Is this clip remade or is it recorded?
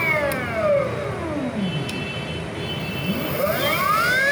recorded